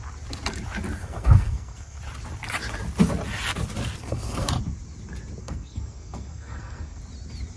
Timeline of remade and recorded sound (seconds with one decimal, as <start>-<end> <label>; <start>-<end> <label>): 0.0-1.0 recorded; 1.0-2.0 remade; 2.0-4.0 recorded; 4.0-4.5 remade; 4.5-5.4 recorded; 5.4-7.0 remade; 7.0-7.6 recorded